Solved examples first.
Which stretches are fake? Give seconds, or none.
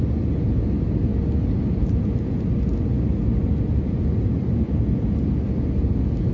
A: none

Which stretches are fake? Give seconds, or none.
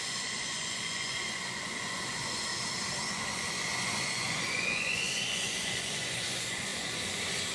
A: 0.0-2.5 (vocoder, Vocos); 3.0-7.5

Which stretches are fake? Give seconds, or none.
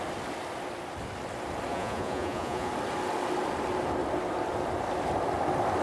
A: 1.7-2.7 (vocoder, Vocos)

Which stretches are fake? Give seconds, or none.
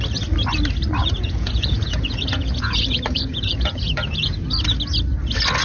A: 1.0-4.4 (vocoder, Vocos)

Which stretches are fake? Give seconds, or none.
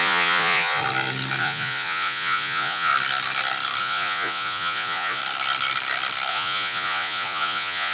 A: 0.0-0.8 (vocoder, Vocos); 1.4-2.9; 3.8-5.2; 6.3-7.9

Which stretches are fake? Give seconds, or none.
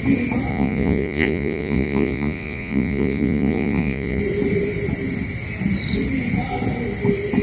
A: 0.5-4.2 (vocoder, Vocos)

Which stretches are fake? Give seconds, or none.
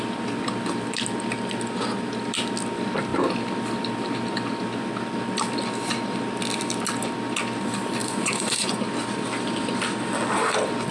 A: 8.0-8.8 (vocoder, Vocos)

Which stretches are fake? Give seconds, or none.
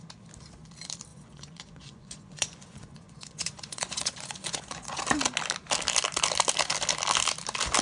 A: 1.1-5.0 (vocoder, Vocos)